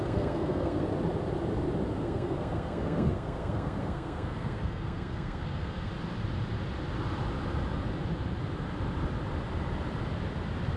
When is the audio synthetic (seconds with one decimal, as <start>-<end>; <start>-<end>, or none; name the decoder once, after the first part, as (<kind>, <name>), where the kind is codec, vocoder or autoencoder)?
0.0-0.9 (codec, SNAC); 2.0-5.9